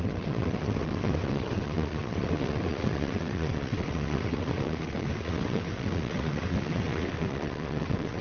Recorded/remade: remade